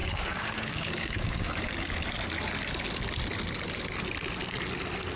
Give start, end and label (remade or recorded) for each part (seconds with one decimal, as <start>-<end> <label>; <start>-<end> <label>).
0.0-1.6 remade; 1.6-5.2 recorded